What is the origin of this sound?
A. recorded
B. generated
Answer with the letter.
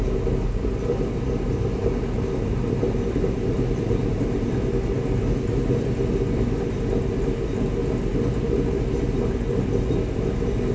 A